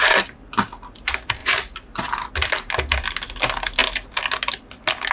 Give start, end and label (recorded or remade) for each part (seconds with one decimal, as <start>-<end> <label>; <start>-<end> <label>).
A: 0.0-5.1 recorded